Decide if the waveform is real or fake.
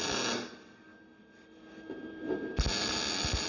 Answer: real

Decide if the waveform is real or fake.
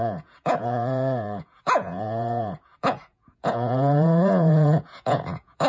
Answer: fake